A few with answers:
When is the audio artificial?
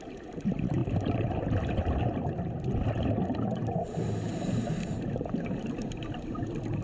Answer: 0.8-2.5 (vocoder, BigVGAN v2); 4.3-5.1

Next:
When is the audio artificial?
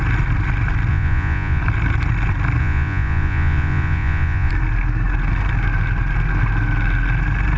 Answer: 0.9-1.6 (vocoder, Vocos); 2.6-4.5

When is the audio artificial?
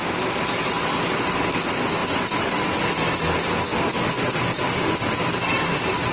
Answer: none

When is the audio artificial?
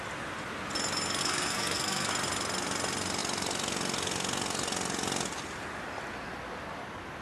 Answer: 1.2-2.1 (codec, SNAC)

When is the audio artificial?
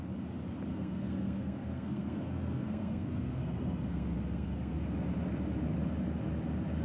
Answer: 0.7-4.8 (codec, SNAC)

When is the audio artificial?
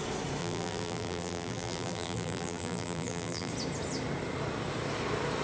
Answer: 0.4-3.5 (vocoder, BigVGAN v2)